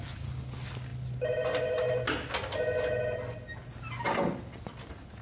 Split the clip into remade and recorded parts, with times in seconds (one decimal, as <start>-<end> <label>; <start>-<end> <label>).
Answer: 0.0-5.2 recorded